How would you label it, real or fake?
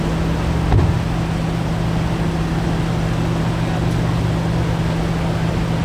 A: real